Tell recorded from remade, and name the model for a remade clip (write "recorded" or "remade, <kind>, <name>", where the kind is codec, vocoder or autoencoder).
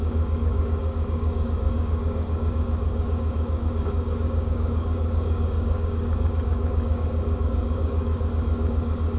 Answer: remade, codec, DAC